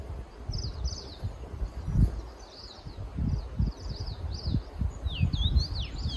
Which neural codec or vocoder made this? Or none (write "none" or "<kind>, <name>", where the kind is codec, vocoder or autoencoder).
none